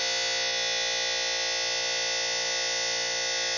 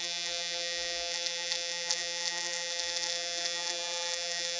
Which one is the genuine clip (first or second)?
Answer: first